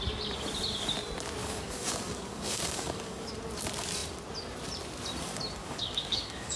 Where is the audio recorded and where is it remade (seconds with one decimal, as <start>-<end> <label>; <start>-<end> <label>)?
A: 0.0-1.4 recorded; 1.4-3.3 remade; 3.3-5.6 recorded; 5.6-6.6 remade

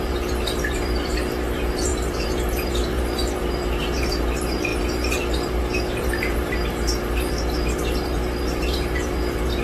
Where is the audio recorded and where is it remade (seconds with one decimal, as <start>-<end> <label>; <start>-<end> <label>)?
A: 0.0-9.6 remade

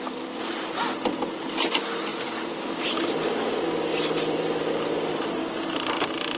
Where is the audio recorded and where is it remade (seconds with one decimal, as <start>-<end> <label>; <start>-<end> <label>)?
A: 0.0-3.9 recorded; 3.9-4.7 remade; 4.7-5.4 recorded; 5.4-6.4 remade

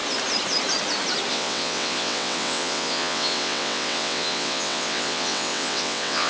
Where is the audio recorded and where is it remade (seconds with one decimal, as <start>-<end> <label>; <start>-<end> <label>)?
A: 0.0-1.3 recorded; 1.3-6.3 remade

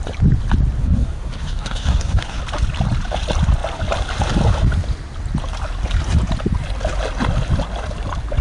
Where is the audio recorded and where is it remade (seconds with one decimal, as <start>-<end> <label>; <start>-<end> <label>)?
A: 0.0-0.8 recorded; 0.8-2.4 remade; 2.4-8.4 recorded

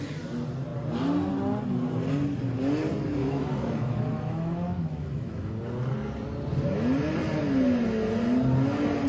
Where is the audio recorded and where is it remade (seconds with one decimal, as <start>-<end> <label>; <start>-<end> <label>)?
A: 0.0-3.2 recorded; 3.2-5.6 remade; 5.6-9.1 recorded